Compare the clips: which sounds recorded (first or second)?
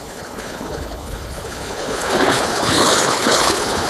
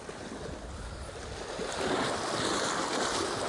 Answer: second